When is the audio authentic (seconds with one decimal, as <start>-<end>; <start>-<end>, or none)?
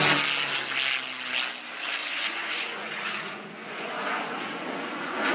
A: 0.0-2.0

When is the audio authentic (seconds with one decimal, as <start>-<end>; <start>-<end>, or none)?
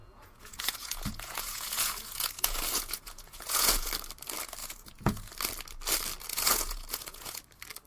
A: 3.9-4.6; 5.3-6.3; 7.4-7.9